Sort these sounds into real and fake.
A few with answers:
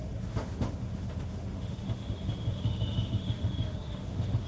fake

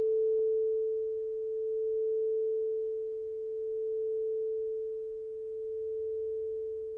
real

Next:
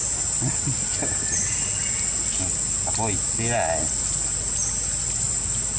real